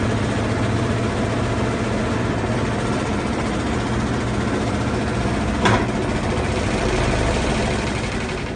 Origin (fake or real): real